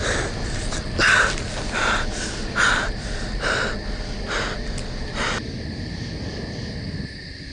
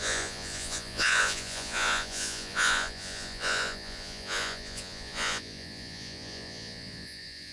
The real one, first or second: first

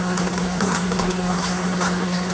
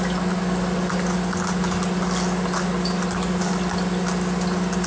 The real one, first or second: second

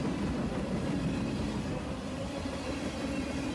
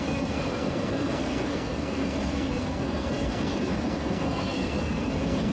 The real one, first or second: first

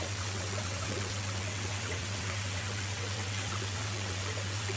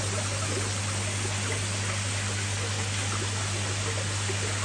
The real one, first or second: second